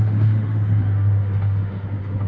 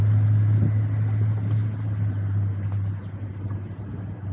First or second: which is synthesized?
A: first